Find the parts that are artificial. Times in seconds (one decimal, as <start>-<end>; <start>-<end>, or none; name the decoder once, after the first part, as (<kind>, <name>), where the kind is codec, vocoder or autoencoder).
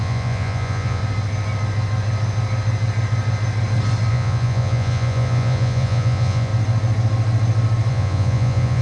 0.0-1.0 (vocoder, Vocos); 4.1-6.5; 7.9-8.8